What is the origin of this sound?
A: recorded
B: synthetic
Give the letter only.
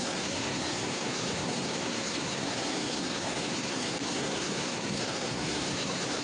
B